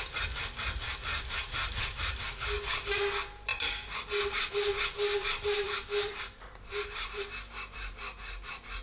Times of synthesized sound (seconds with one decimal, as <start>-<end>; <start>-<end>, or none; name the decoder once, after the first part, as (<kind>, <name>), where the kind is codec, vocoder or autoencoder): 1.1-2.2 (vocoder, BigVGAN v2); 3.5-4.5; 5.1-7.2